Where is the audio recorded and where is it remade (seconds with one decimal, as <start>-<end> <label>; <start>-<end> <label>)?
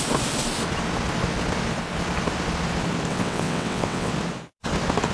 0.0-3.1 recorded; 3.1-4.1 remade; 4.1-5.1 recorded